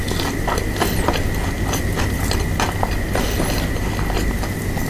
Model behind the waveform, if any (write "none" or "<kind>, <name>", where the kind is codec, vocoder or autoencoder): none